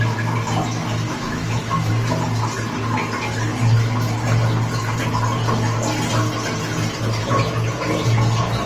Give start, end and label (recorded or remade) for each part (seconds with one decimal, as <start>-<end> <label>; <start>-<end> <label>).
0.0-1.1 recorded; 1.1-1.9 remade; 1.9-8.7 recorded